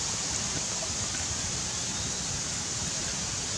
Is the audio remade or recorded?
recorded